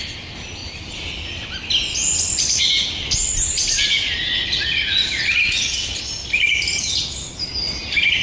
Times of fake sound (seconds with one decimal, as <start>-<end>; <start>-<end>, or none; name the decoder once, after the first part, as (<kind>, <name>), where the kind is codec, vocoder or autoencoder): none